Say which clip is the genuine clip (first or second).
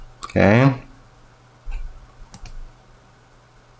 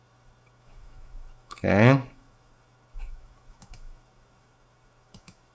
first